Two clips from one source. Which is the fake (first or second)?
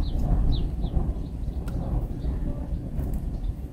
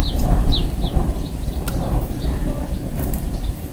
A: second